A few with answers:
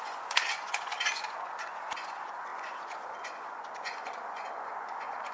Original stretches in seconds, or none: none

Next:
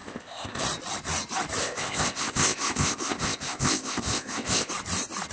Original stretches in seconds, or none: 0.6-1.6; 4.7-5.3

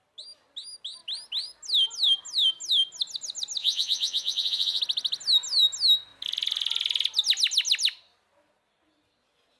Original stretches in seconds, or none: 0.0-3.6; 4.8-9.6

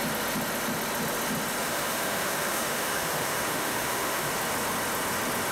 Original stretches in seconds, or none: 0.0-1.6; 4.3-5.5

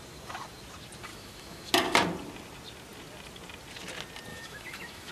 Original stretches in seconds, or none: 0.0-1.1; 1.7-4.3

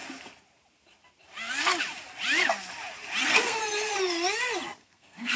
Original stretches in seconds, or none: 0.0-3.2; 3.6-4.8

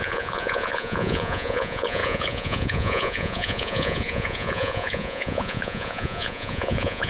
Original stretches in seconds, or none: none

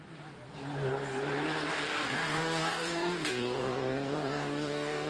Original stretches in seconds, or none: 0.0-1.9